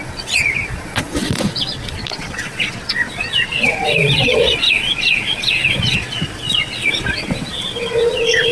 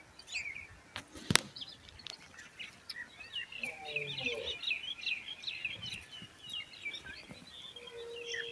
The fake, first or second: first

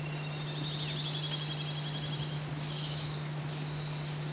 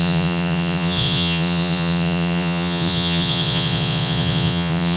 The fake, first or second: second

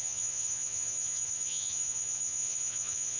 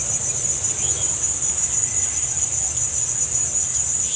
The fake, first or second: first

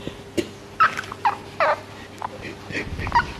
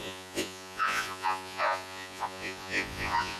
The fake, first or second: second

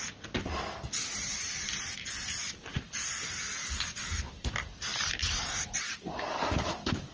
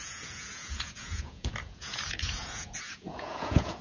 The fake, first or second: second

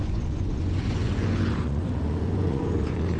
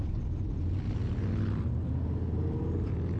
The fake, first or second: first